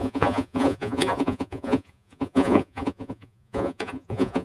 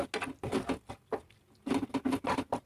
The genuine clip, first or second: second